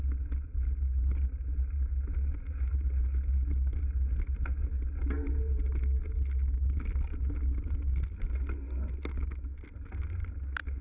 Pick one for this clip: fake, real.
real